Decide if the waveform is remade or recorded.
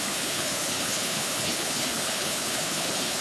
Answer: remade